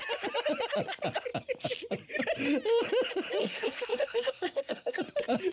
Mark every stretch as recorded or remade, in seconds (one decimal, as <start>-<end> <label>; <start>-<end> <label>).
0.0-3.4 recorded; 3.4-5.0 remade; 5.0-5.5 recorded